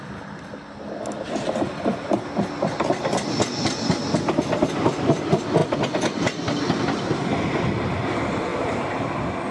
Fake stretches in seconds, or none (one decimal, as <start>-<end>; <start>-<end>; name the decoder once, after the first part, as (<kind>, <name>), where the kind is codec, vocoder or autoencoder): 8.5-9.1 (vocoder, BigVGAN v2)